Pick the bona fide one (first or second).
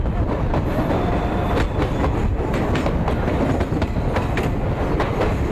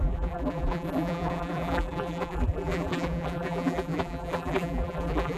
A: first